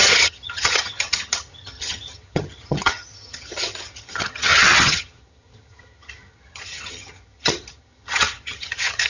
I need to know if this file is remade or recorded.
remade